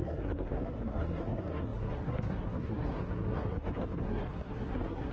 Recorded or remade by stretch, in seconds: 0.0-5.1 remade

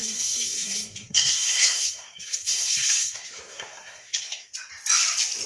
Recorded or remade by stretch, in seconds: 0.0-4.5 remade; 4.5-5.5 recorded

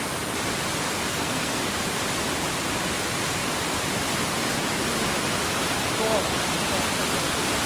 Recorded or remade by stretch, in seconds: 0.0-1.1 recorded; 1.1-1.6 remade; 1.6-7.7 recorded

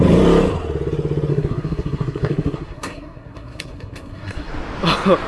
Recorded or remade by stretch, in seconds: 0.0-1.3 recorded; 1.3-4.5 remade; 4.5-5.3 recorded

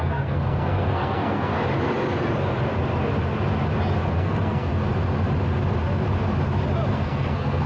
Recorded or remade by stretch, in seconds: 0.0-1.5 remade; 1.5-4.1 recorded; 4.1-4.7 remade; 4.7-6.9 recorded; 6.9-7.7 remade

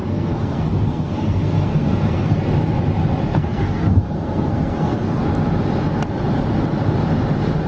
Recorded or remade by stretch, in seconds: 0.0-2.4 remade; 2.4-3.3 recorded; 3.3-5.2 remade; 5.2-7.7 recorded

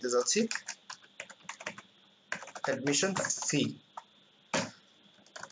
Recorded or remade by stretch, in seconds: 0.0-5.5 recorded

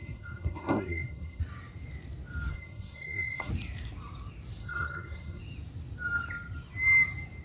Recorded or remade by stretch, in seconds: 0.0-1.4 remade; 1.4-2.5 recorded; 2.5-3.5 remade; 3.5-4.6 recorded; 4.6-5.4 remade; 5.4-7.4 recorded